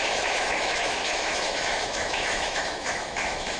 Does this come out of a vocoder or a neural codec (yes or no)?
yes